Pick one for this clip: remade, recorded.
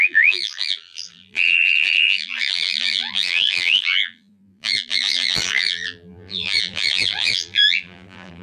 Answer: remade